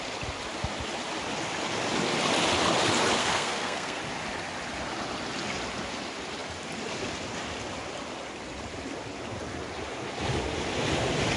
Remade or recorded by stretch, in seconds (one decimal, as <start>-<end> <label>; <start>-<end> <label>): 0.0-3.2 recorded; 3.2-4.0 remade; 4.0-11.4 recorded